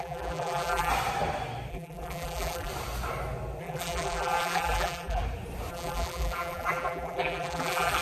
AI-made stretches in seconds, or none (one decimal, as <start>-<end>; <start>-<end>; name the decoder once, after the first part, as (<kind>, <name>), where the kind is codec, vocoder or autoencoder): 0.0-0.9 (vocoder, BigVGAN v2); 1.7-2.7; 3.6-5.2; 5.7-8.0